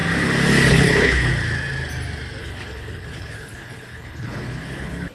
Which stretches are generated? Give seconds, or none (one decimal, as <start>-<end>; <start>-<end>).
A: 0.7-1.3; 2.4-5.1